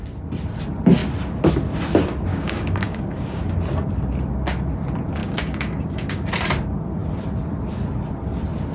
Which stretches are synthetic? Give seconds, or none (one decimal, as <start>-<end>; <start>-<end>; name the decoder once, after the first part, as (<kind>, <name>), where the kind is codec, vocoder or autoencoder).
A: 2.3-3.4 (codec, DAC); 5.2-6.3